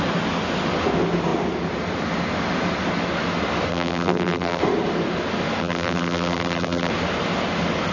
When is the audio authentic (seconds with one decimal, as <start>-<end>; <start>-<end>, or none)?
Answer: 0.0-3.7; 4.6-5.6; 6.9-7.9